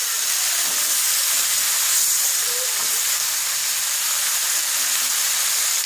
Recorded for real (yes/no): yes